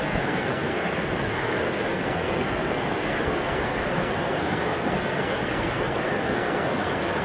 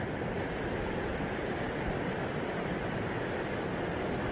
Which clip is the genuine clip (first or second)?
second